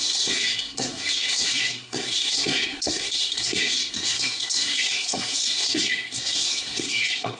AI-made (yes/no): yes